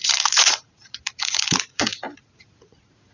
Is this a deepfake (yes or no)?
yes